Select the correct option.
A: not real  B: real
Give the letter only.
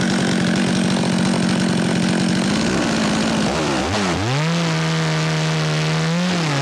B